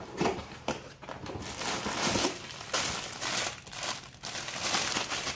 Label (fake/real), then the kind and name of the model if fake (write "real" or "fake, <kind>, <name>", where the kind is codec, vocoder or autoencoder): real